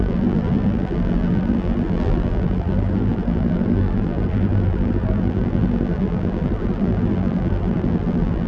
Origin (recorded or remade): remade